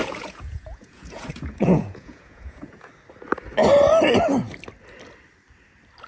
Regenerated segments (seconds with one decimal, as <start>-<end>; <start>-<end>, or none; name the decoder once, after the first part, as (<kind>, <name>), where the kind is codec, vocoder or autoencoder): 0.0-2.9 (vocoder, Vocos)